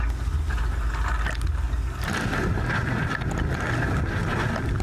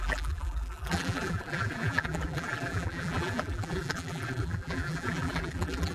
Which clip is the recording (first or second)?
first